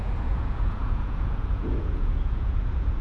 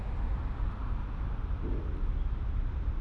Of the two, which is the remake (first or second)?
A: first